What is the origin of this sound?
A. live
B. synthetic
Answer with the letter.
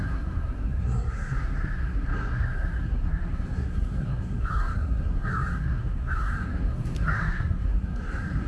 B